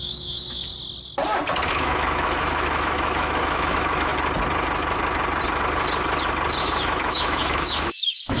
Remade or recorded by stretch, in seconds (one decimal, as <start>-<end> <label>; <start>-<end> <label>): 0.0-0.7 remade; 0.7-1.7 recorded; 1.7-4.1 remade; 4.1-6.6 recorded; 6.6-8.4 remade